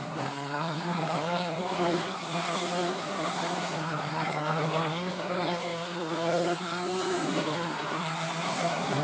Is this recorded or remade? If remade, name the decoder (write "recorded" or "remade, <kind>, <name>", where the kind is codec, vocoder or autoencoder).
remade, codec, SNAC